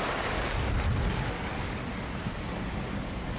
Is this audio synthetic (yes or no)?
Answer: no